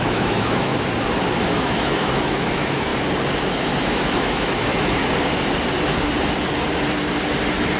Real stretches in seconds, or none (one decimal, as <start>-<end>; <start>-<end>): 0.7-1.5; 2.9-3.8; 5.0-7.8